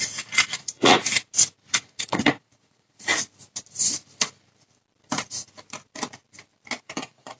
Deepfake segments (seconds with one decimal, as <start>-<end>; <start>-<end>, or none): 0.0-1.1; 1.7-3.1; 6.8-7.4

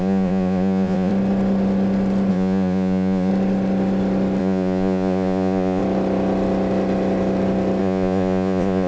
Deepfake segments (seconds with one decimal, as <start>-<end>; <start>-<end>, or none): 0.0-1.1; 2.3-3.3; 4.4-5.8; 7.8-8.9

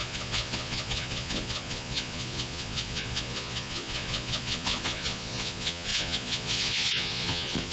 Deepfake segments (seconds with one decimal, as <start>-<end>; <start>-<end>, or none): 0.0-7.7

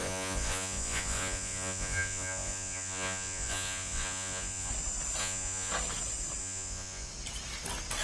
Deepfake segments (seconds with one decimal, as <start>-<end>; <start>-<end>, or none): 0.0-4.7; 5.2-5.7; 6.4-7.1

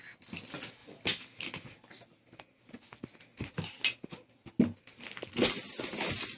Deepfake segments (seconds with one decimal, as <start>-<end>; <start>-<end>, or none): none

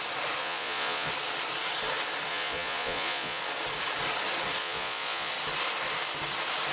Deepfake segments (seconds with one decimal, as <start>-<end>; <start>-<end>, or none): 0.4-1.1; 2.3-3.4; 4.6-5.3

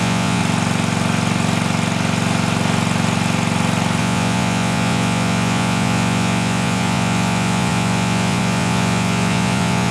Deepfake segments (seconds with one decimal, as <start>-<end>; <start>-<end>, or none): 0.0-0.4; 4.0-9.9

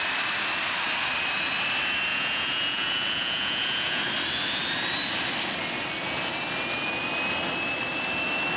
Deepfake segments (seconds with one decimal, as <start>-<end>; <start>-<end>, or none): 2.1-4.0